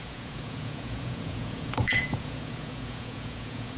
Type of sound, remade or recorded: remade